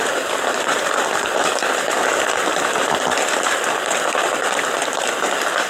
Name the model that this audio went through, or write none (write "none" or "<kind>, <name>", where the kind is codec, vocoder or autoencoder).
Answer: none